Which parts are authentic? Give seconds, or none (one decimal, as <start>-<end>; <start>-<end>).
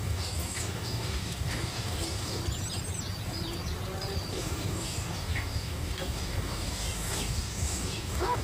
2.4-4.3